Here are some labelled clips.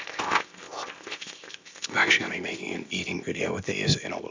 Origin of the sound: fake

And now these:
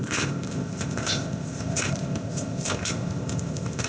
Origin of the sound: fake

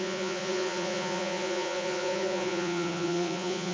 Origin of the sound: fake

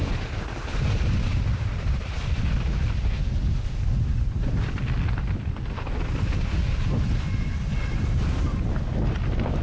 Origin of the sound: real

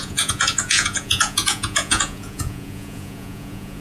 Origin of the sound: fake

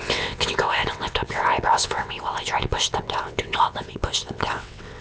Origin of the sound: fake